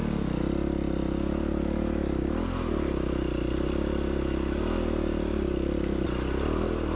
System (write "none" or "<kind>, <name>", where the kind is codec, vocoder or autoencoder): none